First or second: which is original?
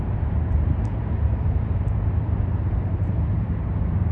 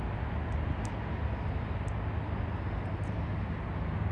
second